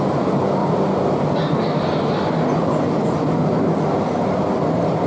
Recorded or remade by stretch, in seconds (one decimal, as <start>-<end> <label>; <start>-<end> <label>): 0.0-0.6 recorded; 0.6-1.8 remade; 1.8-5.1 recorded